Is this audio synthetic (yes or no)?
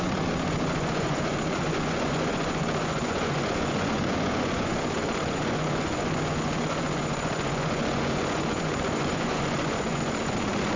yes